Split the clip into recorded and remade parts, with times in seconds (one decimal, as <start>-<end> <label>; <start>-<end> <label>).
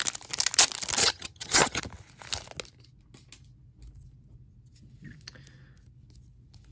0.0-1.0 recorded; 1.0-1.8 remade; 1.8-6.7 recorded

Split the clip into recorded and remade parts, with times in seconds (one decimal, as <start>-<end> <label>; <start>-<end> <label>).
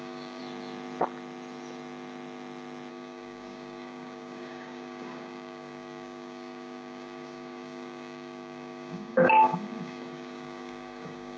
0.0-0.4 remade; 0.4-2.9 recorded; 2.9-11.4 remade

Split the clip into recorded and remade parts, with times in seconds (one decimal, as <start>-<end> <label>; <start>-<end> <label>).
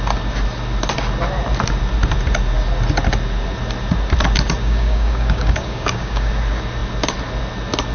0.0-4.6 recorded; 4.6-6.3 remade; 6.3-7.9 recorded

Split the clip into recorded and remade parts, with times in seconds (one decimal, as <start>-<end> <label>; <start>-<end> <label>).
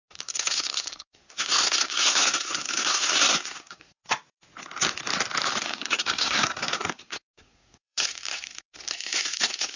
0.0-4.0 remade; 4.0-5.6 recorded; 5.6-9.8 remade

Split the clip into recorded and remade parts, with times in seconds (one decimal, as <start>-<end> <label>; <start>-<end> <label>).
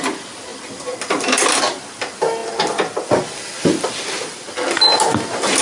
0.0-5.6 recorded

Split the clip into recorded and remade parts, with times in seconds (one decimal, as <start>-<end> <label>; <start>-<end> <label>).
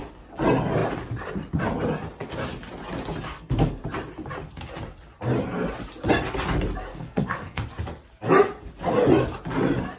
0.0-3.3 recorded; 3.3-3.8 remade; 3.8-6.9 recorded; 6.9-7.6 remade; 7.6-10.0 recorded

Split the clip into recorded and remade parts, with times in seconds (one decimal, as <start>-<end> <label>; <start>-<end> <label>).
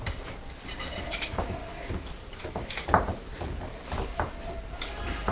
0.0-1.6 remade; 1.6-2.5 recorded; 2.5-5.3 remade